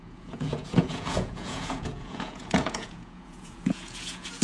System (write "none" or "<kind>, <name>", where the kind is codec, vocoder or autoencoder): vocoder, Vocos